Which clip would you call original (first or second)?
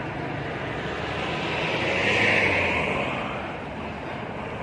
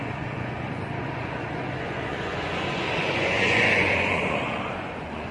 first